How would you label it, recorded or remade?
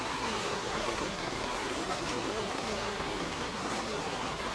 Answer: remade